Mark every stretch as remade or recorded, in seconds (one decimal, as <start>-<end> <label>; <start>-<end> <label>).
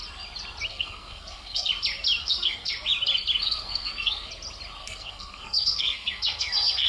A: 0.0-0.7 recorded; 0.7-1.7 remade; 1.7-2.2 recorded; 2.2-2.7 remade; 2.7-3.4 recorded; 3.4-4.3 remade; 4.3-4.8 recorded; 4.8-6.9 remade